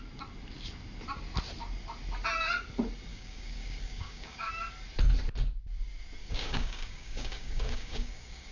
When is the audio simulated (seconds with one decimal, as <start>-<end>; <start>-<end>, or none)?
3.1-4.5; 6.2-8.5